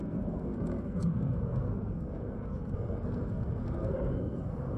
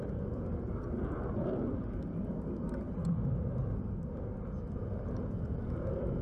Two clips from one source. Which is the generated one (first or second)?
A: first